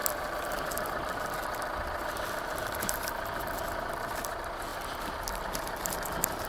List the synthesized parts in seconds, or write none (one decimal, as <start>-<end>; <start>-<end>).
0.0-3.9; 4.7-5.4